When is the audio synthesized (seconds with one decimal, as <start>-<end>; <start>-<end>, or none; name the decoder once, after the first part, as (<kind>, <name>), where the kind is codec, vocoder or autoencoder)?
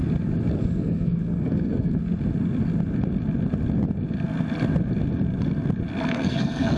0.6-2.0 (codec, SNAC); 6.1-6.8